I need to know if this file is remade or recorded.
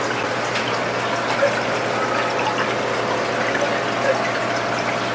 recorded